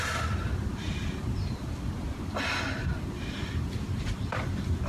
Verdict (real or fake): fake